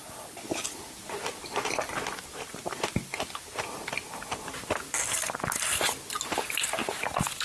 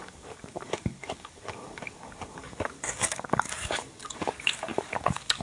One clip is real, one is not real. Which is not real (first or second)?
second